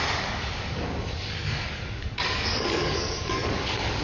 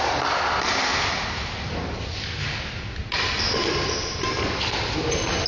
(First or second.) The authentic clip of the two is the second